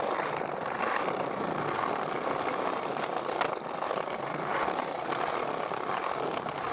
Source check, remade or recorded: recorded